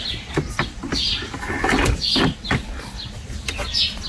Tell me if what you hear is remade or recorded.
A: recorded